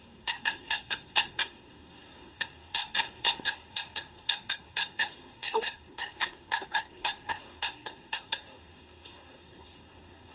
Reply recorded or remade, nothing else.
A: remade